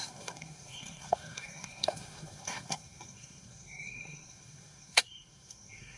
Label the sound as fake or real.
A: fake